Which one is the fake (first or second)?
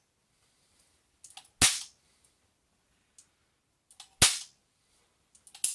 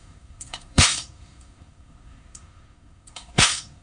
second